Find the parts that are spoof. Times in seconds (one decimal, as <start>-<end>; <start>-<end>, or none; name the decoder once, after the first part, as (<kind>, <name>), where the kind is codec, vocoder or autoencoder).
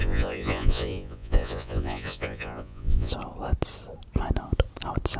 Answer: 0.0-3.1 (vocoder, Vocos)